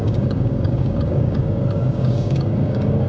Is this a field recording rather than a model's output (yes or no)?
no